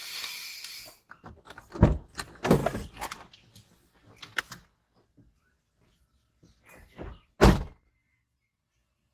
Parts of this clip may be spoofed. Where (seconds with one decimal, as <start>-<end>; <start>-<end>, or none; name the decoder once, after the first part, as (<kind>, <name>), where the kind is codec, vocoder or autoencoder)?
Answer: none